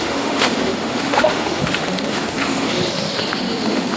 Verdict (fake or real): fake